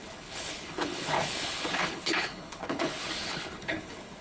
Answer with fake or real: fake